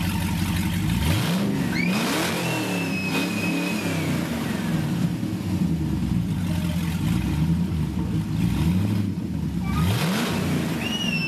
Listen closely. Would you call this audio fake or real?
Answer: real